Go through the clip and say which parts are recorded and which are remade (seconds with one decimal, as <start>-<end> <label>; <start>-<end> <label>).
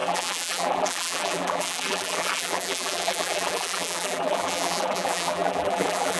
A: 0.0-6.2 remade